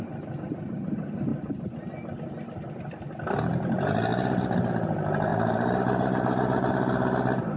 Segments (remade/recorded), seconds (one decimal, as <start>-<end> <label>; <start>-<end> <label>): 0.0-5.3 recorded; 5.3-7.6 remade